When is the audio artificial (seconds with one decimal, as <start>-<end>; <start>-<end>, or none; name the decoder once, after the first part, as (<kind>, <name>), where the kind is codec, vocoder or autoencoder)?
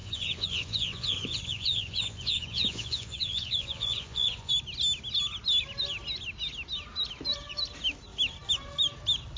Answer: 0.0-4.5 (vocoder, Vocos)